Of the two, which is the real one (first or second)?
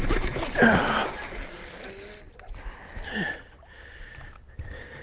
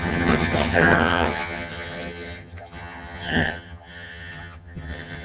first